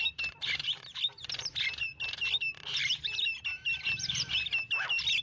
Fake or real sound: fake